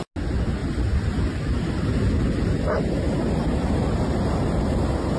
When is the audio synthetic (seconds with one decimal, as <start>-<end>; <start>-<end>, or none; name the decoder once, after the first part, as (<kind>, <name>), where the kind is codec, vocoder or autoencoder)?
none